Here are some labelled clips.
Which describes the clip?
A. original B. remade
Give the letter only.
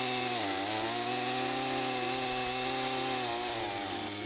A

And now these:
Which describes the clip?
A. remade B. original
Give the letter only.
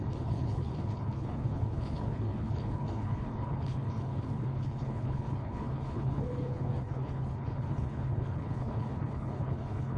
A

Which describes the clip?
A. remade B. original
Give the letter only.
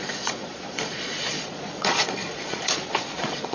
A